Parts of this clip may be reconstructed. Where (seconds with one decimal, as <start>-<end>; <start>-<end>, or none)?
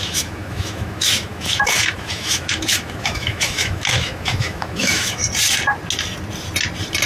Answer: 0.0-5.2